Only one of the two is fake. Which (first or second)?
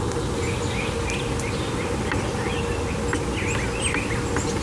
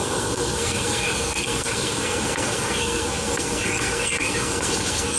second